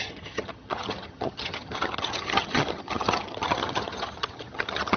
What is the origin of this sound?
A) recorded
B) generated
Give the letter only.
B